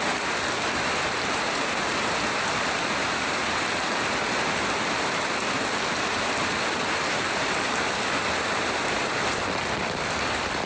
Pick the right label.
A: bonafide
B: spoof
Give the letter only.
A